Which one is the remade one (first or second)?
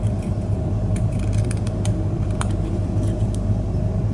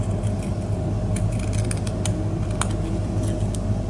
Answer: first